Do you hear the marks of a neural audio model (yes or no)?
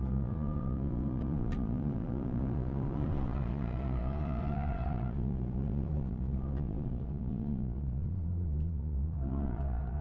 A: yes